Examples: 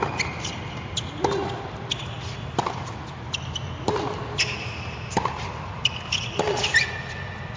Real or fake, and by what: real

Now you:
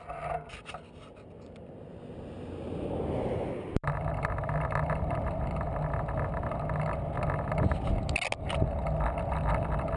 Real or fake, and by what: real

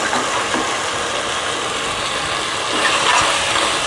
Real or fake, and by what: real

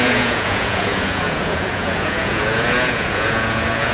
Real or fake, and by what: fake, vocoder, Vocos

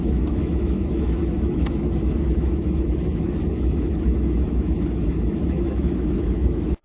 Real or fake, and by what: fake, autoencoder, DAC-VAE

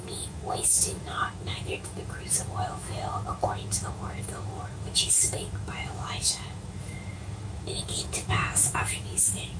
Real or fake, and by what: fake, autoencoder, DAC-VAE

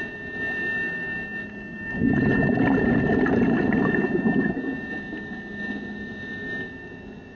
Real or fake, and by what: real